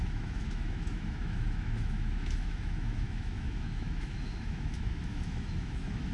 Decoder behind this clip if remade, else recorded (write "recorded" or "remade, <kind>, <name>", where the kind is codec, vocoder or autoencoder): remade, autoencoder, DAC-VAE